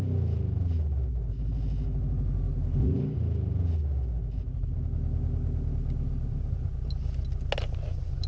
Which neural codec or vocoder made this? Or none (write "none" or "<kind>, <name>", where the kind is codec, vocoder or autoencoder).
none